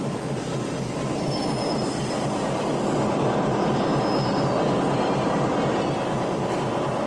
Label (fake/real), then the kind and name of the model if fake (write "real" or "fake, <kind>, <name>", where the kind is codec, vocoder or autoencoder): real